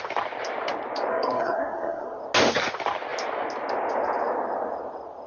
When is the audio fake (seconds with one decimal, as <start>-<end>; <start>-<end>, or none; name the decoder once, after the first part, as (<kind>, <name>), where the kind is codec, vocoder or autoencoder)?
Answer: 1.1-2.2 (codec, SNAC)